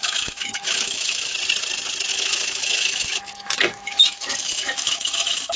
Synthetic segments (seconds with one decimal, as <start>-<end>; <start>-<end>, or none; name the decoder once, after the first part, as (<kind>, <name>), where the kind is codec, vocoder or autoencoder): 0.0-1.3 (autoencoder, DAC-VAE); 2.1-5.6